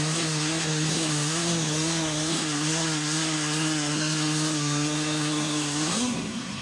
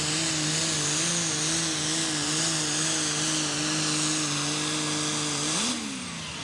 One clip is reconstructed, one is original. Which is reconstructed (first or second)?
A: first